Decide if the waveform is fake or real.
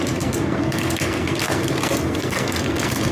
fake